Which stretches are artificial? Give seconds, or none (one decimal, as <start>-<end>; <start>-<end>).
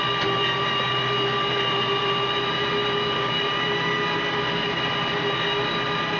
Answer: none